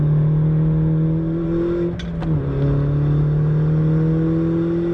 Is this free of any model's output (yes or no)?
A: yes